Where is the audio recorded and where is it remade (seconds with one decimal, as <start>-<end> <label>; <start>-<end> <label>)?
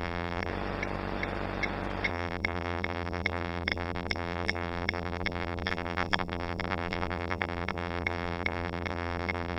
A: 0.0-0.5 remade; 0.5-2.1 recorded; 2.1-9.6 remade